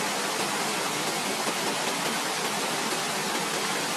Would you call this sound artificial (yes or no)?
no